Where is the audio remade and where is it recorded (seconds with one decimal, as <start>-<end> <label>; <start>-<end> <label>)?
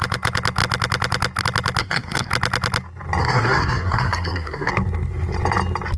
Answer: 0.0-1.8 recorded; 1.8-2.3 remade; 2.3-3.2 recorded; 3.2-4.7 remade; 4.7-6.0 recorded